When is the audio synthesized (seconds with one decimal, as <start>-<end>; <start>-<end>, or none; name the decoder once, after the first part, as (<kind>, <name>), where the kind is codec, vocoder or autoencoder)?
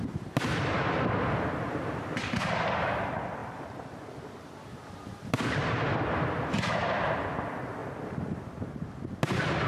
3.4-6.5 (vocoder, BigVGAN v2)